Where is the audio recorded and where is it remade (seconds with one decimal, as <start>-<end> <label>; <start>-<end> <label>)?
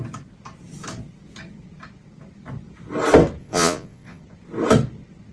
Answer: 0.0-3.4 recorded; 3.4-4.2 remade; 4.2-5.3 recorded